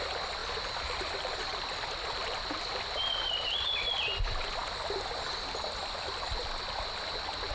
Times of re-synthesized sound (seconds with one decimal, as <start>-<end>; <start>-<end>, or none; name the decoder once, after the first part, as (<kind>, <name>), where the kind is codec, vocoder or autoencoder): 0.4-4.0 (vocoder, BigVGAN v2)